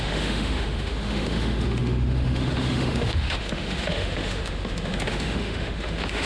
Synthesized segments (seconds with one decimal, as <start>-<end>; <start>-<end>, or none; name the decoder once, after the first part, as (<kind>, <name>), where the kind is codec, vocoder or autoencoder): 0.0-6.3 (autoencoder, DAC-VAE)